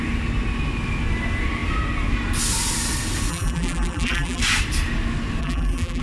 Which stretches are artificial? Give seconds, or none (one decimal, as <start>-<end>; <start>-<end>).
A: 3.3-4.4; 5.4-6.0